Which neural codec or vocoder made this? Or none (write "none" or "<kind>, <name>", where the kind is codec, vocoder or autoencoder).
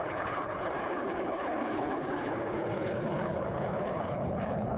codec, HILCodec